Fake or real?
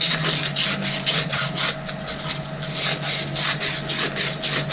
real